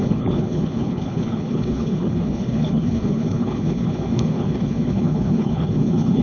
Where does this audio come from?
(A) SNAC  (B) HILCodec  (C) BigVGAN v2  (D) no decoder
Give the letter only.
B